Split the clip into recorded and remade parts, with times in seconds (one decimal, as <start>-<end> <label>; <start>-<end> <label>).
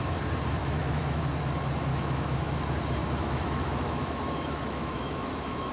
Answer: 0.0-0.6 recorded; 0.6-1.2 remade; 1.2-1.9 recorded; 1.9-2.6 remade; 2.6-3.0 recorded; 3.0-5.7 remade